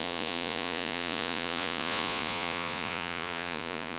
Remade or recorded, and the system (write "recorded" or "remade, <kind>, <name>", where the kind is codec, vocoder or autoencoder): remade, vocoder, Vocos